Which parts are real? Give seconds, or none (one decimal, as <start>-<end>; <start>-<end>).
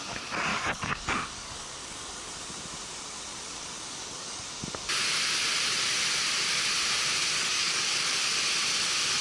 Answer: 0.0-0.5; 2.3-3.3; 4.4-7.4; 8.3-9.2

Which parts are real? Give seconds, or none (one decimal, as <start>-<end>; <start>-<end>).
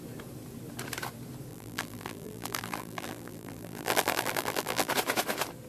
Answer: 0.0-1.5; 4.9-5.7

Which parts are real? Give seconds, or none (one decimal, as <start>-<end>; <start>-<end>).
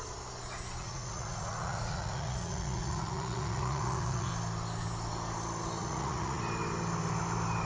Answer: 0.0-0.8; 4.3-5.8; 6.4-7.7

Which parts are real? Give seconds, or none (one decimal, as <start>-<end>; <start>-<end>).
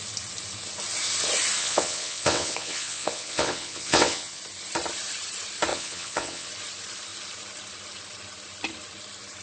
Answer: 0.0-1.6; 4.4-5.7; 6.5-9.4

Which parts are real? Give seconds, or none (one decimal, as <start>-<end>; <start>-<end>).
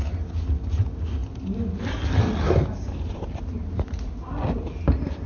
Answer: 0.0-5.3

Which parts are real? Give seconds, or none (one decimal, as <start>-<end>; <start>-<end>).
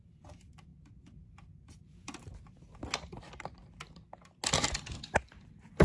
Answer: 0.0-5.8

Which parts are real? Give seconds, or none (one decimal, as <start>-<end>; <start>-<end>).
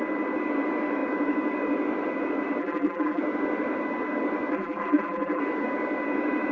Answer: 0.0-2.6; 3.2-4.5; 5.4-6.5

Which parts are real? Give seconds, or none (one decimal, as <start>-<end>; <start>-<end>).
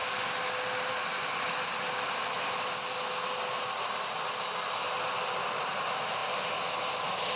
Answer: 0.0-7.4